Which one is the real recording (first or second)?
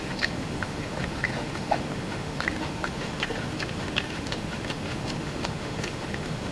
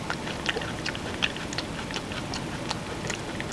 second